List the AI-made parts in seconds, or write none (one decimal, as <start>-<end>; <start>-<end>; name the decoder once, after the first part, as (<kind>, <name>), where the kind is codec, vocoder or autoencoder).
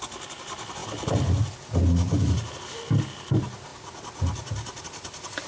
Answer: none